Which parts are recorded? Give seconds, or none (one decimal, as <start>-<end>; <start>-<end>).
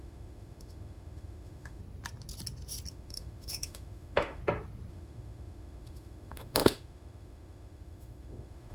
1.8-2.9; 4.4-4.9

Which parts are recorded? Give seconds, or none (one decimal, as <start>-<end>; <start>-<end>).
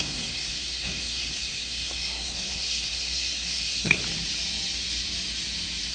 4.0-5.9